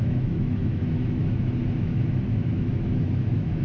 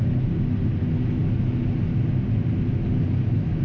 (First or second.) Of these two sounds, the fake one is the first